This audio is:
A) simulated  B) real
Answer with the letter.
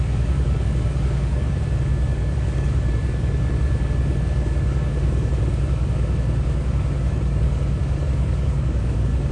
A